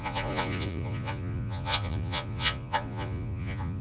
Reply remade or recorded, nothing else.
remade